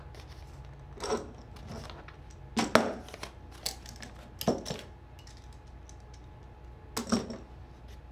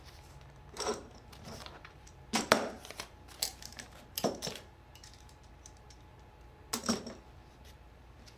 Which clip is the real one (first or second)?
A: first